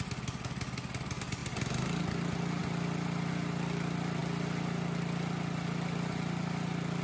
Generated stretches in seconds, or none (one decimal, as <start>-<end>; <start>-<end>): none